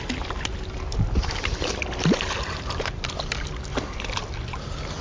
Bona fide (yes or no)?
yes